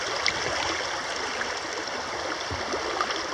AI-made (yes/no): no